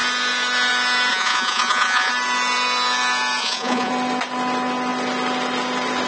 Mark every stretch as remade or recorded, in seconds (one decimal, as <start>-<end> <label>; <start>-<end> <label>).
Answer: 0.0-1.1 recorded; 1.1-2.1 remade; 2.1-3.4 recorded; 3.4-3.9 remade; 3.9-6.1 recorded